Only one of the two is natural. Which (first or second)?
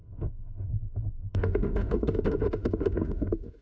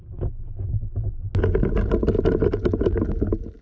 second